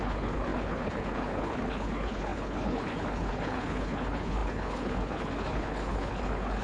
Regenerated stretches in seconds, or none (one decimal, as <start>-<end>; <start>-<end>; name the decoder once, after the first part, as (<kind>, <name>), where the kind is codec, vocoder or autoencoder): 0.0-6.6 (codec, HILCodec)